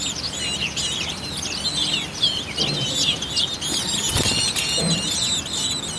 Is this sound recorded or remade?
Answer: recorded